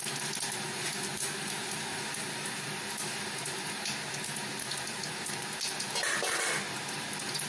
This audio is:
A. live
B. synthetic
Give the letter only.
A